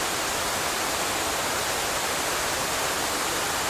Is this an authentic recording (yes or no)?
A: yes